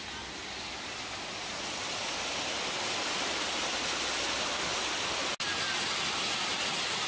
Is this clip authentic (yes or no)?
yes